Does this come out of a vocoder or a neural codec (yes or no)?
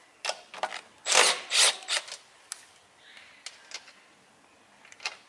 no